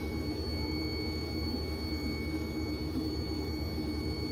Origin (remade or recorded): remade